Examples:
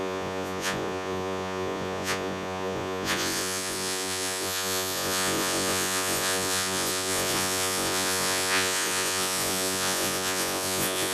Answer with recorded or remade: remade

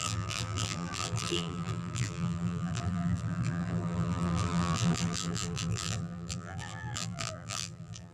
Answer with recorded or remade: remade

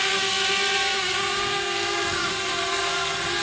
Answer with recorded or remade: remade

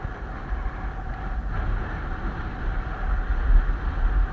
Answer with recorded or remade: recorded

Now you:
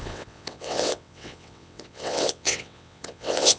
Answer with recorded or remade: remade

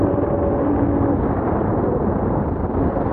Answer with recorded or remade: remade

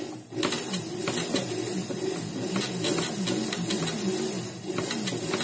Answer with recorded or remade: recorded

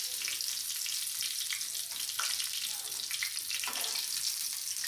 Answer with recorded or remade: recorded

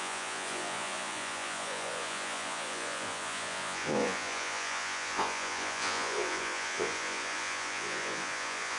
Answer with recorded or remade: remade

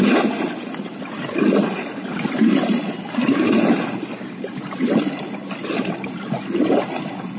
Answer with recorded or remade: recorded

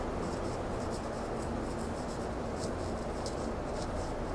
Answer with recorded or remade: recorded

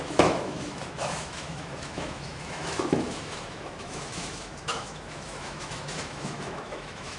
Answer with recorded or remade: remade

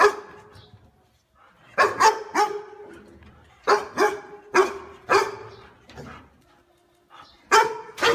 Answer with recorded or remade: recorded